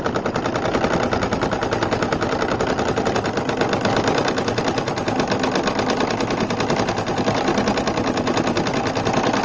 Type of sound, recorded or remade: recorded